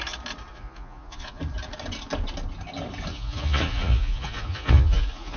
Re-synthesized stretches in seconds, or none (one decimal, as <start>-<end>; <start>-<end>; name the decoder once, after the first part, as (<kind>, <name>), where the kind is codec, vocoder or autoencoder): 0.5-1.4 (vocoder, Vocos); 3.1-5.4